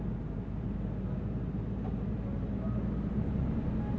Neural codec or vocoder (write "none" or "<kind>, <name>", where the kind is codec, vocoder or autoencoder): none